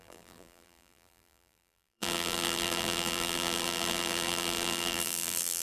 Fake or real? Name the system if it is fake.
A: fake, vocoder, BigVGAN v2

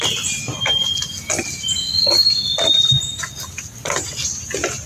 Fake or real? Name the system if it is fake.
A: real